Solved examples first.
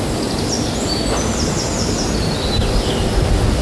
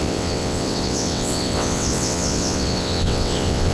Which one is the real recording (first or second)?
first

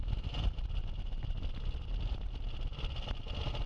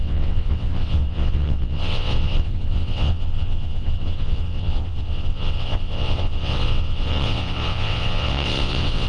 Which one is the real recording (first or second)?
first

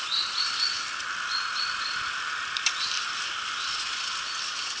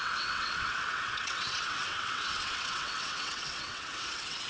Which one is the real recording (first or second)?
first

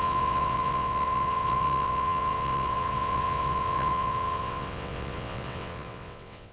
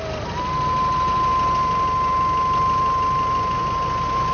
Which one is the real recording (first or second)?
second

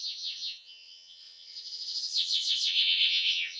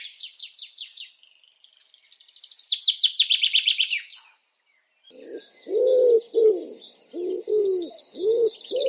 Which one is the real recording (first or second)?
second